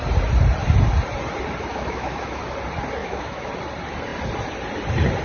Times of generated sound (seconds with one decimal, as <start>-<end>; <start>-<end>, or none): 1.7-2.4; 3.0-3.5